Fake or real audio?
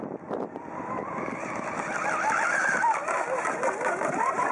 real